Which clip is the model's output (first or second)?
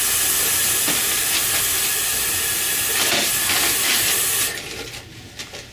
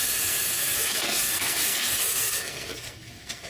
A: second